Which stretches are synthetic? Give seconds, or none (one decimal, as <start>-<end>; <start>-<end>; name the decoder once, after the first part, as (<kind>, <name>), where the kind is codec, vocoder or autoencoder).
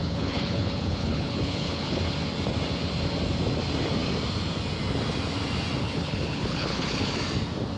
0.0-2.0 (codec, HILCodec); 5.8-7.1